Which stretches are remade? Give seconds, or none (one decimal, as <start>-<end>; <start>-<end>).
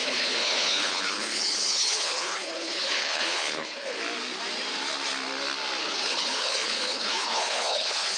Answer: 0.0-4.0; 5.8-8.2